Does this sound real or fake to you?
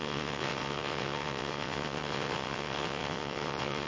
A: fake